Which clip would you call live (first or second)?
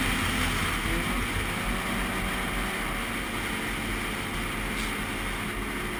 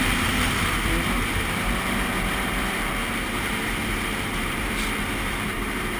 first